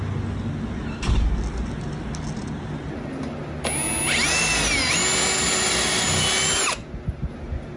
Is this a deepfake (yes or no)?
no